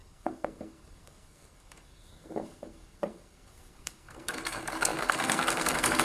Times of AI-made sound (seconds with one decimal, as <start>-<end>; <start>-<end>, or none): 0.0-6.0